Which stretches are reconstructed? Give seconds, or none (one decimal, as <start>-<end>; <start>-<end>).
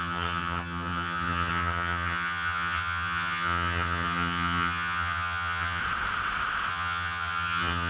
0.0-5.8; 6.7-7.9